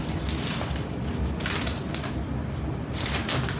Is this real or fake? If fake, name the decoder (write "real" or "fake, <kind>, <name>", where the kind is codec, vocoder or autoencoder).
real